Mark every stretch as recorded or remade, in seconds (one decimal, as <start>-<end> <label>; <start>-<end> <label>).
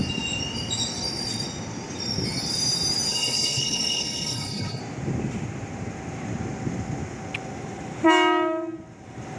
0.0-3.1 recorded; 3.1-4.8 remade; 4.8-9.4 recorded